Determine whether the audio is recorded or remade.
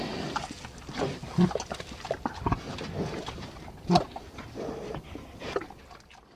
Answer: recorded